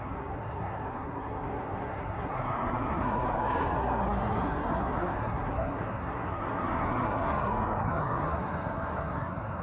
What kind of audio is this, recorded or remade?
remade